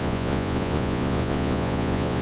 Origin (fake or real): fake